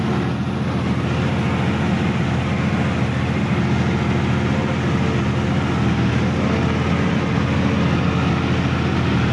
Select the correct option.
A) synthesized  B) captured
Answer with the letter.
B